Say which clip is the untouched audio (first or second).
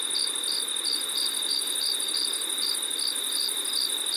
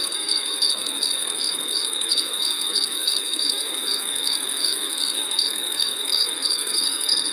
first